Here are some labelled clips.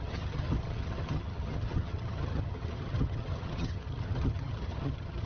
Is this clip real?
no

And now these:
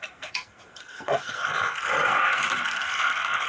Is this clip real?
no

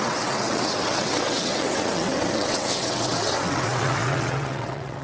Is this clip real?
no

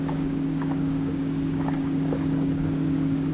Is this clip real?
no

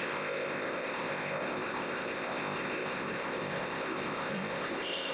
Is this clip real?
no